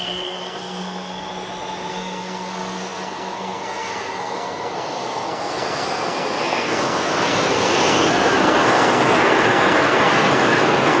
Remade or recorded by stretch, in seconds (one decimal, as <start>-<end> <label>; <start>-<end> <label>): 0.0-1.3 remade; 1.3-1.9 recorded; 1.9-11.0 remade